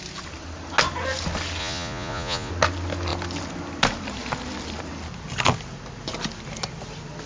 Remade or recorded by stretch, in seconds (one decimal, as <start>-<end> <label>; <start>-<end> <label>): 0.0-1.6 recorded; 1.6-2.5 remade; 2.5-7.3 recorded

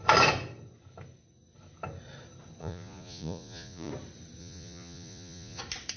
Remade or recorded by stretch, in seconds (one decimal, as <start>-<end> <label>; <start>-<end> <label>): 0.0-2.6 recorded; 2.6-3.9 remade; 3.9-4.4 recorded; 4.4-5.6 remade; 5.6-6.0 recorded

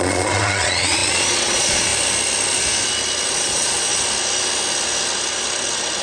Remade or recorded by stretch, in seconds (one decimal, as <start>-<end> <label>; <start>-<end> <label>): 0.0-1.9 remade; 1.9-3.3 recorded; 3.3-3.9 remade; 3.9-6.0 recorded

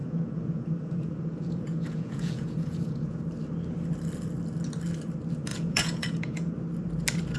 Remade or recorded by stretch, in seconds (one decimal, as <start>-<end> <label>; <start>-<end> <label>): 0.0-3.2 remade; 3.2-5.5 recorded; 5.5-6.5 remade; 6.5-7.4 recorded